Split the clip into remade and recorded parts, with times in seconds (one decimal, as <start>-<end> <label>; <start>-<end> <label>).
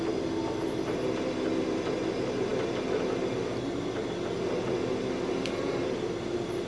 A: 0.0-6.7 recorded